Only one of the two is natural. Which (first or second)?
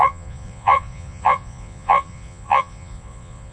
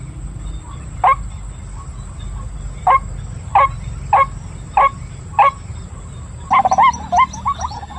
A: second